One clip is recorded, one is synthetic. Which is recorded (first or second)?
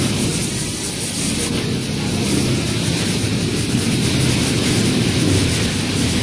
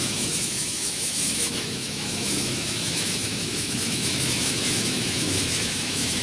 first